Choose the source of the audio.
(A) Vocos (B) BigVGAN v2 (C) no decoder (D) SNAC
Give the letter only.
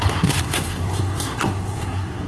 D